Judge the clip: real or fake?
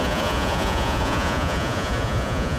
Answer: fake